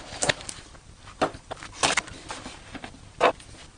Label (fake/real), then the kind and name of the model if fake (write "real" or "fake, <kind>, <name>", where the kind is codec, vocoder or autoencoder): fake, vocoder, BigVGAN v2